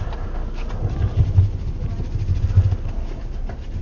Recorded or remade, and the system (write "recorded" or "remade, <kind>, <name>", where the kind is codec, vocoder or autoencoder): recorded